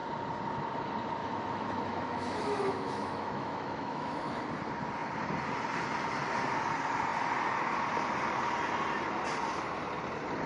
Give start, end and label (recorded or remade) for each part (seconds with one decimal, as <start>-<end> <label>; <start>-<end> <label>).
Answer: 0.0-1.2 recorded; 1.2-4.4 remade; 4.4-10.5 recorded

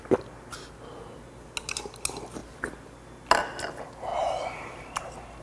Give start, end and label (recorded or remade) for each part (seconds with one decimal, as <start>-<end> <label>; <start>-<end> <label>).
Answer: 0.0-4.1 recorded; 4.1-5.4 remade

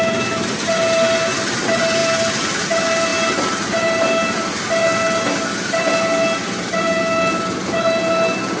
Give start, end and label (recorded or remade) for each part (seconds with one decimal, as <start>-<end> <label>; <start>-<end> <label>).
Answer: 0.0-8.6 recorded

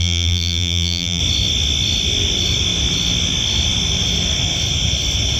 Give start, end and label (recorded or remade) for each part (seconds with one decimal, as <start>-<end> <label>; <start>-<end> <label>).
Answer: 0.0-1.2 remade; 1.2-5.4 recorded